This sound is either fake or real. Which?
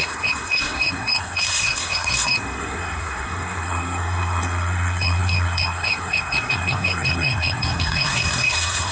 fake